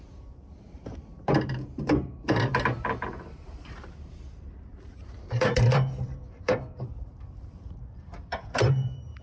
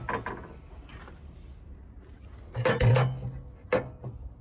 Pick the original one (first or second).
second